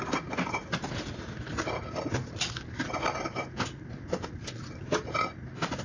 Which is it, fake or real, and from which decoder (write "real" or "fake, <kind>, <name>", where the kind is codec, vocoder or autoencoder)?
real